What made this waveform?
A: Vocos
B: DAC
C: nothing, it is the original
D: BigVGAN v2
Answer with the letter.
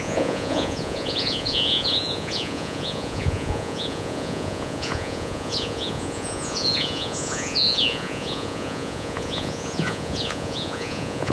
A